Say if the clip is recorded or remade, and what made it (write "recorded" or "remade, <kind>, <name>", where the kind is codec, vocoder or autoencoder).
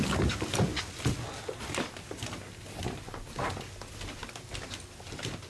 recorded